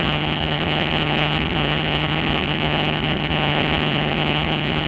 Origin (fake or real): fake